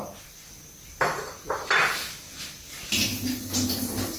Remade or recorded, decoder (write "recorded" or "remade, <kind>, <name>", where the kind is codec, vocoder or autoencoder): recorded